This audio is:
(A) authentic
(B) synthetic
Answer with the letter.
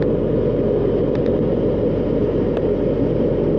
A